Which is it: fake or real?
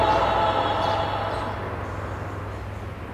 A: real